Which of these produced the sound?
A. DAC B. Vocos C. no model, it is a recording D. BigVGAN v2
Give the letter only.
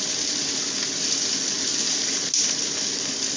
C